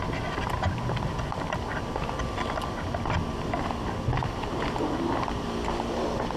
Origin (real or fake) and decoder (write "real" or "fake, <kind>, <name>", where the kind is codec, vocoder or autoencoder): real